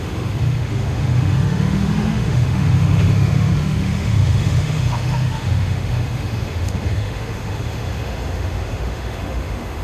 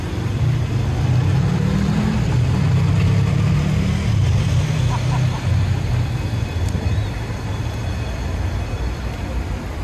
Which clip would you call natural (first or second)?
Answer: second